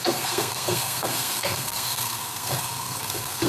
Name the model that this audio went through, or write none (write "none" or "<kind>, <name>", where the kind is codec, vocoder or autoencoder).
codec, SNAC